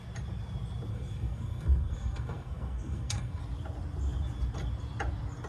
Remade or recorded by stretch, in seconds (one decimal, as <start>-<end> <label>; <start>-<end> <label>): 0.0-0.9 recorded; 0.9-3.4 remade; 3.4-5.5 recorded